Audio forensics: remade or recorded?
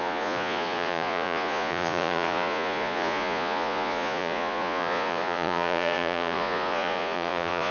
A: remade